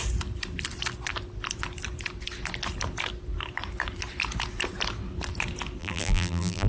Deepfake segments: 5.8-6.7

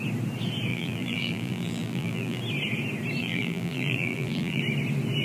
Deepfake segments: 0.7-2.4; 3.2-4.6